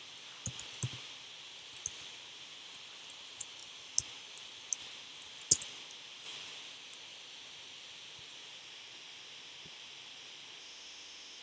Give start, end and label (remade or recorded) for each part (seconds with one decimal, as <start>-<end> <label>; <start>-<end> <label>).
0.0-10.6 recorded; 10.6-11.4 remade